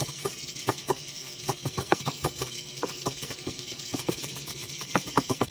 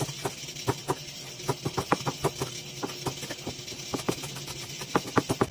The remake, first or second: first